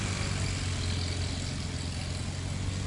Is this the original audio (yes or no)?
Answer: yes